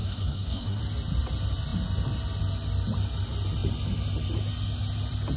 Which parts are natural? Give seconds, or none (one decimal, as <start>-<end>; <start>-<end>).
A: 0.8-5.4